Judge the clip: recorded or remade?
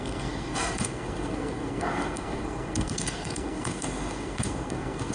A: remade